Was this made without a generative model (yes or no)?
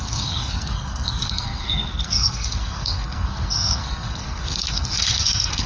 no